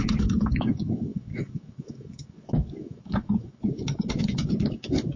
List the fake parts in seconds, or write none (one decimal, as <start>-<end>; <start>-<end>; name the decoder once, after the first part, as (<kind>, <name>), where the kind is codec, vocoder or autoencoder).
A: 0.0-5.2 (autoencoder, DAC-VAE)